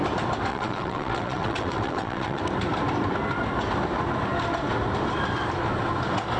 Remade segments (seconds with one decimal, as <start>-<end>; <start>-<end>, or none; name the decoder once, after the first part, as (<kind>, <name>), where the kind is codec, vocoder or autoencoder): 0.5-2.4 (vocoder, WaveNeXt)